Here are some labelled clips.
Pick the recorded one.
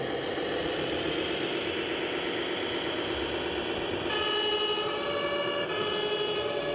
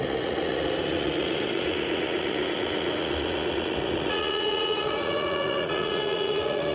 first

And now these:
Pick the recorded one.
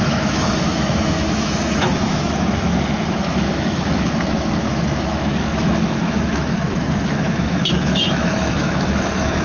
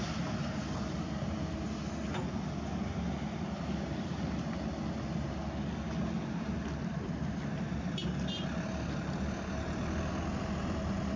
second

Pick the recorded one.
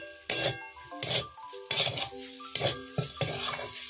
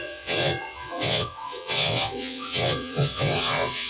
first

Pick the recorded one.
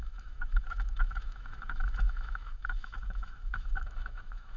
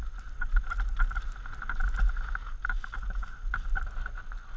second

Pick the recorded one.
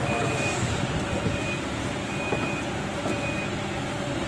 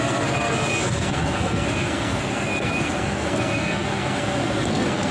first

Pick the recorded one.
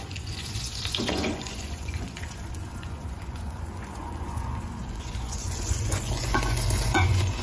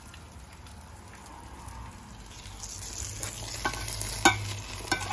second